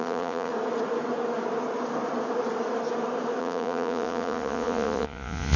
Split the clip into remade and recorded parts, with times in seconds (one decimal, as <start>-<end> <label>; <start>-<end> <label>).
0.0-0.5 remade; 0.5-3.4 recorded; 3.4-5.6 remade